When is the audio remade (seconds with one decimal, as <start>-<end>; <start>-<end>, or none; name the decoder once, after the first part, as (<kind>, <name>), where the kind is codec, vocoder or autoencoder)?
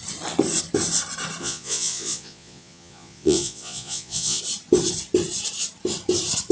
1.4-4.4 (vocoder, Vocos)